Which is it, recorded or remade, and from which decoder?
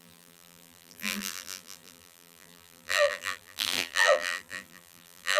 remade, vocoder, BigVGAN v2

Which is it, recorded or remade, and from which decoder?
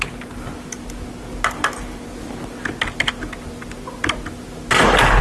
recorded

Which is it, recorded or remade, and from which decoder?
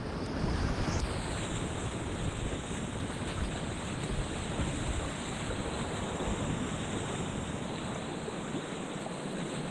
recorded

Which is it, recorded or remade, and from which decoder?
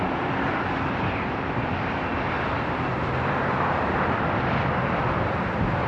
remade, vocoder, BigVGAN v2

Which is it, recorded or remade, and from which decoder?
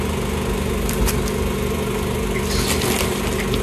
recorded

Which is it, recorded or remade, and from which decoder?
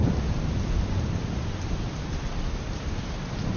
recorded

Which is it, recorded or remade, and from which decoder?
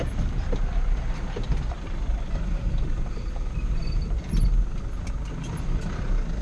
remade, vocoder, BigVGAN v2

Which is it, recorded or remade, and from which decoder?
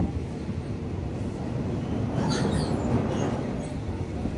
recorded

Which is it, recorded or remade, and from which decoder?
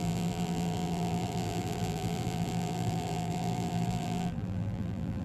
remade, vocoder, BigVGAN v2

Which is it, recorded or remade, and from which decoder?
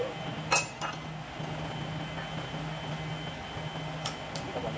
recorded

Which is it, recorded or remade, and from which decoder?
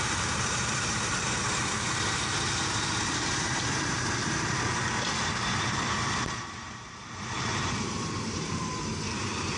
remade, vocoder, BigVGAN v2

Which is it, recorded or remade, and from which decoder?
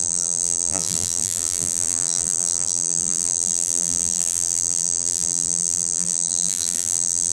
remade, vocoder, BigVGAN v2